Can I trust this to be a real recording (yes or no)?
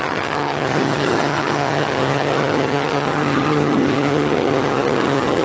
no